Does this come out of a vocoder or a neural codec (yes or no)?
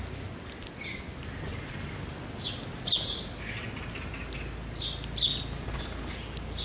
no